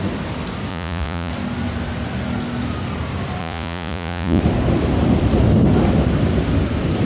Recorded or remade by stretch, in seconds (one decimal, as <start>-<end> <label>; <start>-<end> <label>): 0.0-0.7 recorded; 0.7-1.3 remade; 1.3-3.4 recorded; 3.4-4.4 remade; 4.4-7.1 recorded